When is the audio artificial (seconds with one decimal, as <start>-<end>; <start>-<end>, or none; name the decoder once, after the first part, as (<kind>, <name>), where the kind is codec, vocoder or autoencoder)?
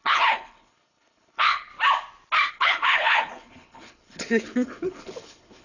0.0-1.7 (codec, HILCodec); 2.5-5.6